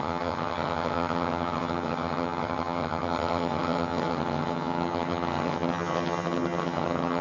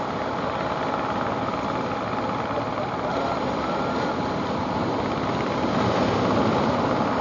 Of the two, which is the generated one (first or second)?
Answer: first